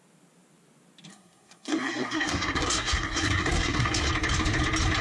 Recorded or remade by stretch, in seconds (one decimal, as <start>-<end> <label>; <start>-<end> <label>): 0.0-1.1 recorded; 1.1-4.1 remade; 4.1-5.0 recorded